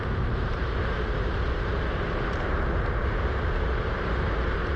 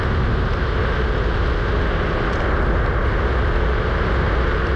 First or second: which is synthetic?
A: first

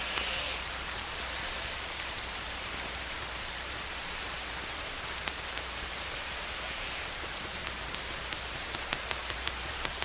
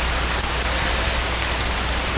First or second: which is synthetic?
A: first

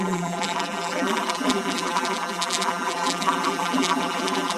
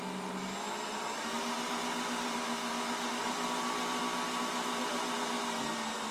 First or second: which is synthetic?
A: first